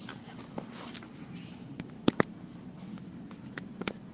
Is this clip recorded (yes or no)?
yes